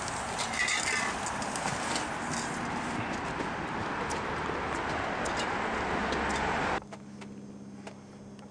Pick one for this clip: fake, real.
real